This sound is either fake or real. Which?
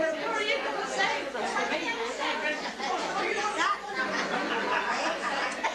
fake